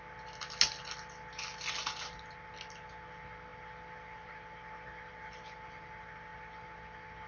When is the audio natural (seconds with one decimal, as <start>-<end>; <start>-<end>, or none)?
0.0-7.3